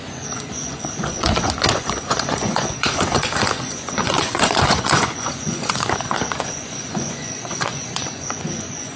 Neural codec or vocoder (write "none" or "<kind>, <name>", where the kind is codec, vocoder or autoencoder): vocoder, Vocos